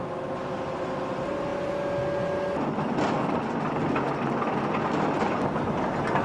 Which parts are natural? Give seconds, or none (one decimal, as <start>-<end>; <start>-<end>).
0.0-6.2